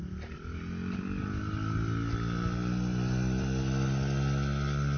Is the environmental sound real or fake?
real